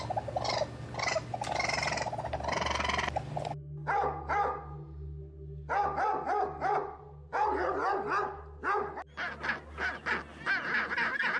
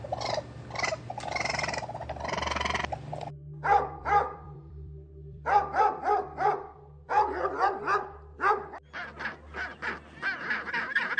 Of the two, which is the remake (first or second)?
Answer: second